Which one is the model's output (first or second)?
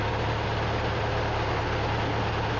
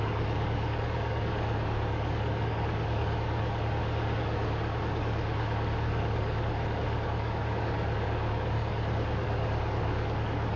second